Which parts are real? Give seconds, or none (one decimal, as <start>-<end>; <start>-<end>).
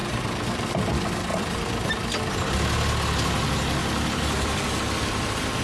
0.7-1.3; 1.9-3.8; 4.8-5.6